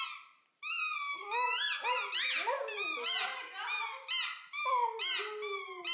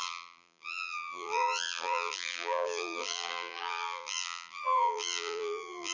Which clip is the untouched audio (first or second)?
first